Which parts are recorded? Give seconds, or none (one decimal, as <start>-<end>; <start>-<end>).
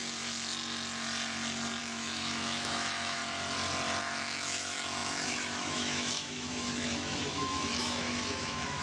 0.0-1.8; 3.2-4.0